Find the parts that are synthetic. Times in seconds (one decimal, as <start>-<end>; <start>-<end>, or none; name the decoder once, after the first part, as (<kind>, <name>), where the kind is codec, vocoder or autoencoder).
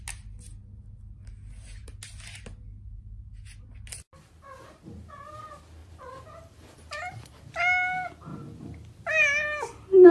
5.8-7.5 (vocoder, BigVGAN v2)